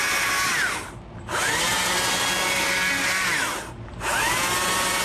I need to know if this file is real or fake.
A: real